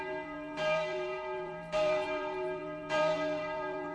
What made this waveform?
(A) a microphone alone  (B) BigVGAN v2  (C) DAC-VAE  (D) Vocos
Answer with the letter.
B